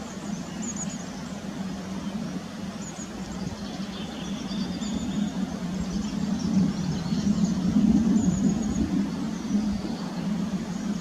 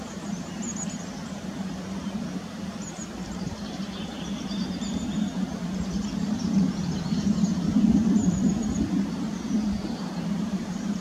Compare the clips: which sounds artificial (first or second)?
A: second